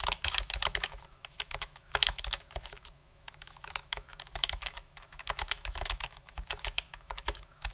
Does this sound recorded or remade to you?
remade